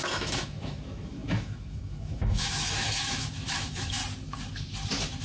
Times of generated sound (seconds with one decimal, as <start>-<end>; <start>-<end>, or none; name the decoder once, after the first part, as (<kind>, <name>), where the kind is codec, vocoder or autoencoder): 0.0-4.0 (autoencoder, DAC-VAE)